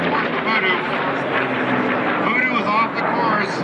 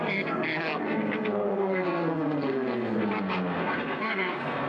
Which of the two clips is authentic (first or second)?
first